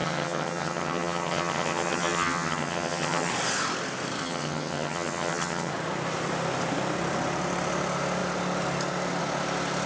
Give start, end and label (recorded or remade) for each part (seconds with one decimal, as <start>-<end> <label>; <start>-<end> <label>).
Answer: 0.0-3.3 remade; 3.3-4.2 recorded; 4.2-5.7 remade; 5.7-9.9 recorded